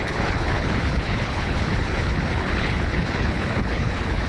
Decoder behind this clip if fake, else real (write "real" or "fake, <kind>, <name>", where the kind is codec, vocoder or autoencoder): fake, codec, HILCodec